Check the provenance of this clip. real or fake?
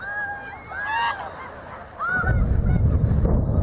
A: real